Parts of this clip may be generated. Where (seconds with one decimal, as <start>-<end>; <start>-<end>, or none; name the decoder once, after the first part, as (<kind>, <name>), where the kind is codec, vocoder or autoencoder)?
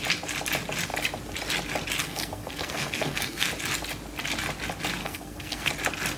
2.0-3.5 (codec, SNAC); 5.0-5.7